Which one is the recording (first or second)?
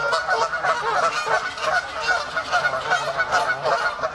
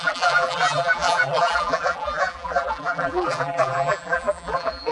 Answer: first